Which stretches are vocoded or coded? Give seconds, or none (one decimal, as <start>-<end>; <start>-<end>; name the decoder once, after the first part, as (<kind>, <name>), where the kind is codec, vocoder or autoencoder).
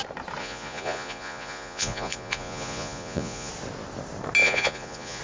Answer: 0.4-3.5 (vocoder, Vocos); 4.4-5.2